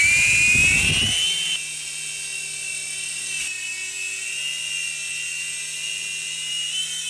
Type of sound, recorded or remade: recorded